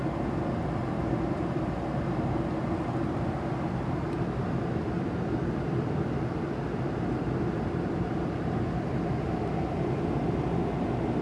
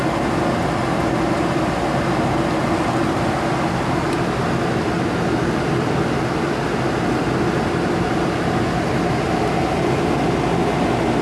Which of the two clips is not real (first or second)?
first